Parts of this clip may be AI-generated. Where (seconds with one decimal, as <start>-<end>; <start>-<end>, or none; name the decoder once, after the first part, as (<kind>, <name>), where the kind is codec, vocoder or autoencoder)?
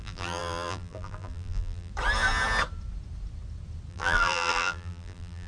0.0-1.9 (vocoder, BigVGAN v2); 3.9-5.5